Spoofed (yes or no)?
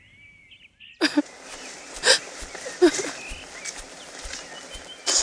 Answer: no